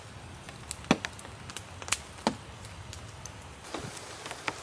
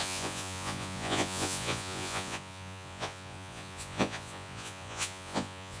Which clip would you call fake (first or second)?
second